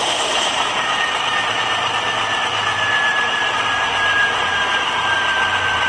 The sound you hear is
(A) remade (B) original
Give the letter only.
A